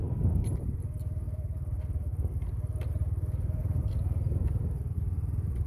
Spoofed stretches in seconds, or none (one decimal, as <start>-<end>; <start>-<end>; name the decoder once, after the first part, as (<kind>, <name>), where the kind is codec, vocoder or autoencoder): 0.6-2.1 (vocoder, BigVGAN v2); 2.9-5.7

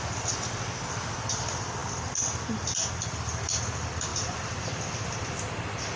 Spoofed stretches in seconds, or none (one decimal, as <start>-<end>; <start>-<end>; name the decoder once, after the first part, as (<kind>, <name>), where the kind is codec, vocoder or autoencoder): none

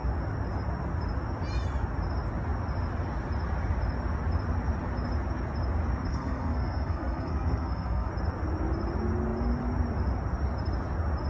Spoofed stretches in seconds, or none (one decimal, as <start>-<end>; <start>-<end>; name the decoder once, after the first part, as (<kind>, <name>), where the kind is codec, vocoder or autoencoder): 6.1-8.1 (codec, SNAC)

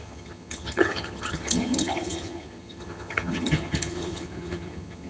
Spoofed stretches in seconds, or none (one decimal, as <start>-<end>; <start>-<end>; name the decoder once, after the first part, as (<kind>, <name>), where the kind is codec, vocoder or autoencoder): 0.0-5.1 (vocoder, HiFi-GAN)

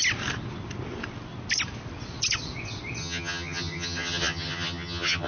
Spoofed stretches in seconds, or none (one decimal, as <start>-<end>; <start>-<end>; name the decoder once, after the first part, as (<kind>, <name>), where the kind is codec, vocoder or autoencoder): 3.0-5.3 (vocoder, HiFi-GAN)

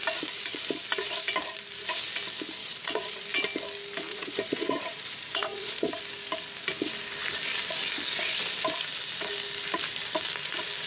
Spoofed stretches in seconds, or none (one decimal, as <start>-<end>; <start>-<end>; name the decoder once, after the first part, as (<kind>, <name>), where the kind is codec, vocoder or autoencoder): 2.6-3.2 (vocoder, Vocos); 4.1-6.0

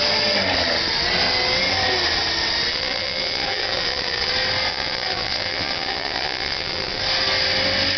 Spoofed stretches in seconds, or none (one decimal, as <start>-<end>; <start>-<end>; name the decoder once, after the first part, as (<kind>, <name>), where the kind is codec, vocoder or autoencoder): 2.7-4.3 (vocoder, WaveNeXt); 4.7-7.0

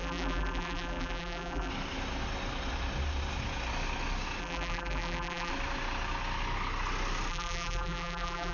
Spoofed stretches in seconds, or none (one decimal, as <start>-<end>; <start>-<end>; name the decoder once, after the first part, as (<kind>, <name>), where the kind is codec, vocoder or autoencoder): 0.0-1.7 (vocoder, BigVGAN v2); 4.4-5.5; 7.3-8.5